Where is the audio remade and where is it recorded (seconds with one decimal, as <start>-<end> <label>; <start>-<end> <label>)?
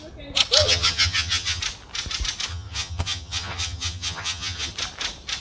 0.0-0.6 recorded; 0.6-1.6 remade; 1.6-2.5 recorded; 2.5-4.7 remade; 4.7-5.4 recorded